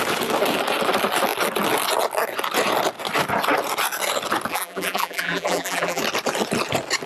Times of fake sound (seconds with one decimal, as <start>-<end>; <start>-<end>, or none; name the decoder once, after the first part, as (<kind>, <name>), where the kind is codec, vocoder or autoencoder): 4.5-6.0 (vocoder, BigVGAN v2)